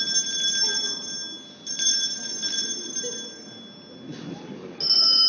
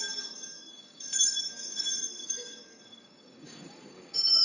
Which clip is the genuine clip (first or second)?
first